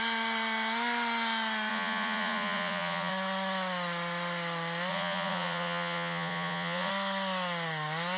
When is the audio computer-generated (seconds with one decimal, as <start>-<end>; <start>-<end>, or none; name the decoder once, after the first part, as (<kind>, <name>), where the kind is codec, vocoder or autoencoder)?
1.7-3.1 (vocoder, Vocos); 4.9-6.9

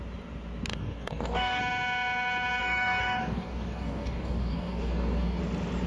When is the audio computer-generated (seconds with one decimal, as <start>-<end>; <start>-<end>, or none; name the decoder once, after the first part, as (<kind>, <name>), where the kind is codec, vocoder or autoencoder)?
0.7-1.6 (codec, DAC); 2.6-5.4